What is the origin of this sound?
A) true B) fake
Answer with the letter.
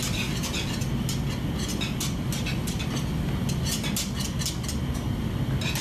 A